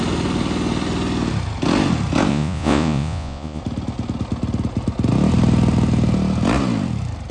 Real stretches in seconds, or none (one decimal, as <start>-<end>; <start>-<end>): 0.0-2.3; 3.6-7.3

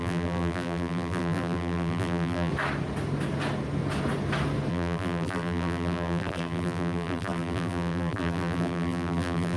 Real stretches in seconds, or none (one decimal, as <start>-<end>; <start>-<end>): 2.5-4.7

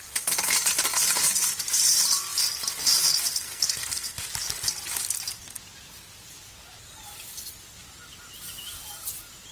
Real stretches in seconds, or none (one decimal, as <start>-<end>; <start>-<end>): 0.0-3.3; 4.2-9.5

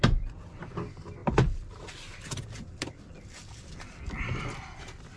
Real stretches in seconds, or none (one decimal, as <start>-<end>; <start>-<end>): 0.0-1.2; 4.3-5.2

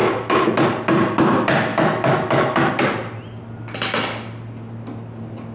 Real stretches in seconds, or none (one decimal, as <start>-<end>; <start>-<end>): 0.5-1.7; 2.7-5.5

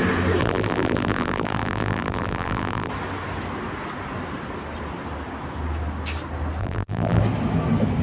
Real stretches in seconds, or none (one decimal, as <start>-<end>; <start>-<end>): 0.0-0.4; 2.9-6.6; 7.2-8.0

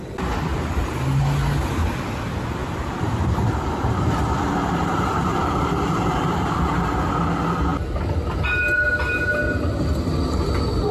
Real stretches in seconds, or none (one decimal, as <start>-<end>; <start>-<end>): 0.0-0.5; 1.2-2.6; 6.9-10.9